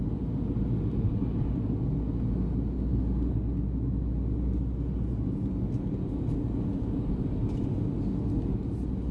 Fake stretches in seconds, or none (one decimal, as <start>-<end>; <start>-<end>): none